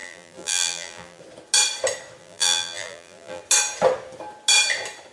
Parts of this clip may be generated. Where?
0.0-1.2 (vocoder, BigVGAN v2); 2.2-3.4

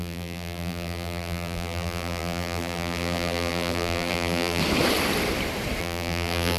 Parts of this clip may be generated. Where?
0.0-4.6 (vocoder, BigVGAN v2); 5.8-6.6

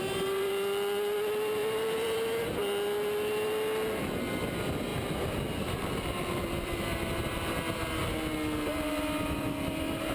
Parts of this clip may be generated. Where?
1.6-2.4 (vocoder, BigVGAN v2); 6.4-7.8

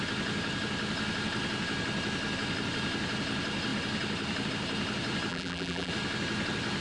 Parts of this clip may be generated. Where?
5.3-5.9 (vocoder, BigVGAN v2)